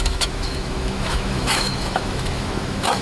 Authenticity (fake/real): fake